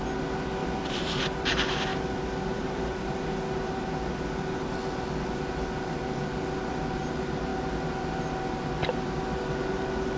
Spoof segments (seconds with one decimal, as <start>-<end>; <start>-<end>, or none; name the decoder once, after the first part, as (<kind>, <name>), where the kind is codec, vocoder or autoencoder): 0.6-1.2 (vocoder, BigVGAN v2); 1.9-3.1